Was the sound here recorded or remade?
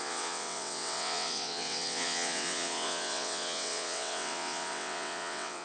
remade